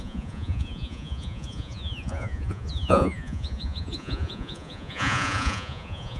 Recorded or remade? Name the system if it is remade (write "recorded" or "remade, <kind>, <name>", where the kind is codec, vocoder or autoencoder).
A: remade, vocoder, Vocos